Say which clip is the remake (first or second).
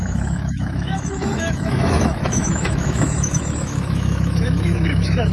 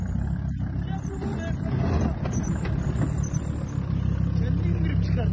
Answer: first